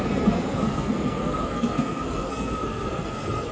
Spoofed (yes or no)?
yes